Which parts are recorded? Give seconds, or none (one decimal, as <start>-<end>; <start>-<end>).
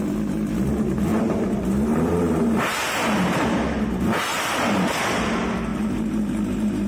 0.0-1.1; 3.4-4.3; 5.0-5.7